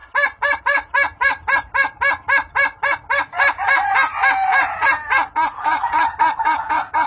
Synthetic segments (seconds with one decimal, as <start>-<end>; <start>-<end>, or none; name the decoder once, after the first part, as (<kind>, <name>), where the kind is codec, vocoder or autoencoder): none